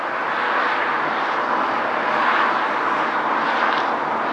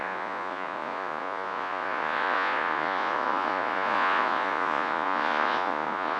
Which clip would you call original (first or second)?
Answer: first